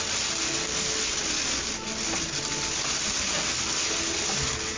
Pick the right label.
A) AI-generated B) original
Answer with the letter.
B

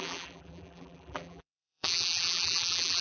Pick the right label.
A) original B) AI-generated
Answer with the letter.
B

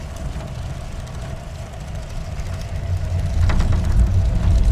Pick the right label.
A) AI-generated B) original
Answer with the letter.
B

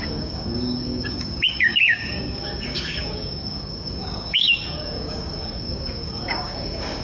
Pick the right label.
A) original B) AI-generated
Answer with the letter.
B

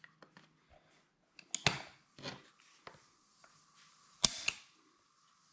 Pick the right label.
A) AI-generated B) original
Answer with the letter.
B